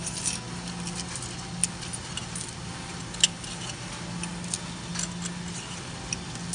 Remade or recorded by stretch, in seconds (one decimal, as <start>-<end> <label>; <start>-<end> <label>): 0.0-6.5 recorded